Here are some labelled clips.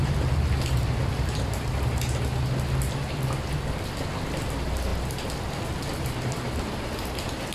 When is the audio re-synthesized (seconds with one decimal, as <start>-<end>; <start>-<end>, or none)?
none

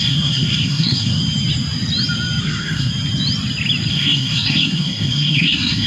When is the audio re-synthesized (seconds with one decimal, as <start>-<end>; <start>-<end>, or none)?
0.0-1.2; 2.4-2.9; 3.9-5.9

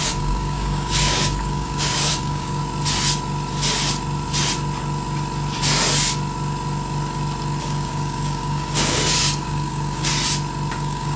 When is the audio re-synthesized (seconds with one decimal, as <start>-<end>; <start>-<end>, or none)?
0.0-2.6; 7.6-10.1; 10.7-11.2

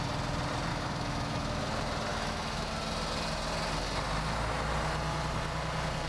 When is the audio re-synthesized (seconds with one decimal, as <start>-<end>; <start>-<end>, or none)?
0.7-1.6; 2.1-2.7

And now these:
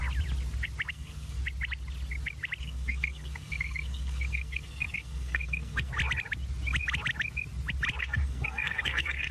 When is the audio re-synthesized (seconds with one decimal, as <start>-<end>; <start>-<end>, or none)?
0.9-1.4; 2.6-5.9; 8.0-9.3